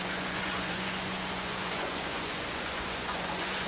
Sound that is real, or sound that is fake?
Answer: fake